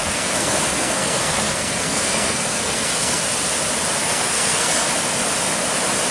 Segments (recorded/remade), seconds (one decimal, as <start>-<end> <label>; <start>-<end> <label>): 0.0-3.2 remade; 3.2-4.0 recorded; 4.0-4.9 remade; 4.9-6.1 recorded